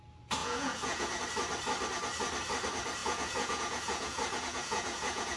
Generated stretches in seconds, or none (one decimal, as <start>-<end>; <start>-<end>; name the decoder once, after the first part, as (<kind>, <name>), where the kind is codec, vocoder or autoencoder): 0.4-1.2 (vocoder, Vocos); 3.0-5.4